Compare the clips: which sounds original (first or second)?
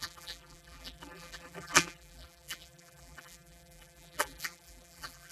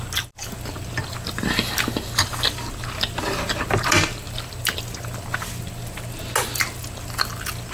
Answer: second